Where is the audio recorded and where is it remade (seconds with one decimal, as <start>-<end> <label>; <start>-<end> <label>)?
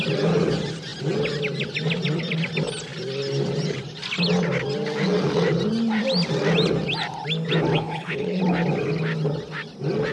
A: 0.0-7.7 recorded; 7.7-8.4 remade; 8.4-10.1 recorded